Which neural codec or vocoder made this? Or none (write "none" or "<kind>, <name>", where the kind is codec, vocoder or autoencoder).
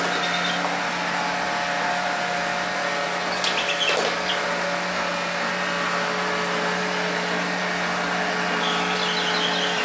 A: none